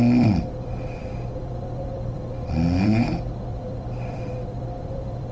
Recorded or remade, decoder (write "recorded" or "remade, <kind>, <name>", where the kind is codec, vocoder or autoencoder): remade, vocoder, BigVGAN v2